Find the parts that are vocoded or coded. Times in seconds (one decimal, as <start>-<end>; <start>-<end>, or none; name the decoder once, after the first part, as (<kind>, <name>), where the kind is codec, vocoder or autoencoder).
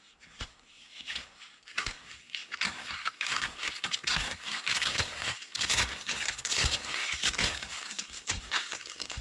0.0-9.2 (codec, SNAC)